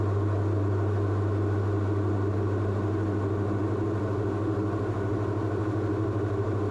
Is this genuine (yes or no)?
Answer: yes